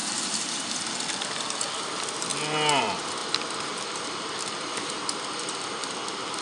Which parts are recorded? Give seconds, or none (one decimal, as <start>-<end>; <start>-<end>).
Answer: 0.8-6.4